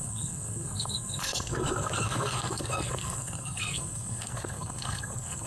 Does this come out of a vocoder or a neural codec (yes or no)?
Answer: yes